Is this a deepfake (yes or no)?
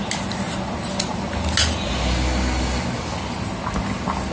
no